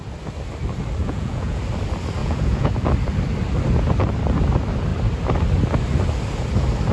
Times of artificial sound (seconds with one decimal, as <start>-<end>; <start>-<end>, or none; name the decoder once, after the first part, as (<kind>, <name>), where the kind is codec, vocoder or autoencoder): 1.0-1.6 (vocoder, Vocos); 2.2-2.7